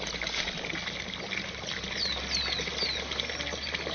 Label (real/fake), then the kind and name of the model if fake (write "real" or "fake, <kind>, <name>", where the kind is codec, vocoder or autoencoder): real